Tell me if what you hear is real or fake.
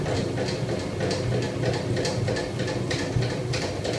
real